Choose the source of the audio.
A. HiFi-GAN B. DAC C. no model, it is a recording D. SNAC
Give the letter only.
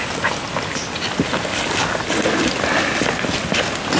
C